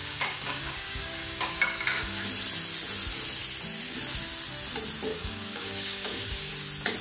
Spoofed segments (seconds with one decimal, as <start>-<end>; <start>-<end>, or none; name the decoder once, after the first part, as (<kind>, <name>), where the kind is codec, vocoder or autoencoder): 0.0-2.3 (codec, DAC); 5.1-6.5